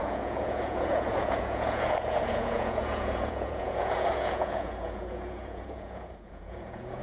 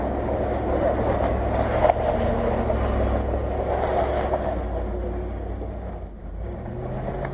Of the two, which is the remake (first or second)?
first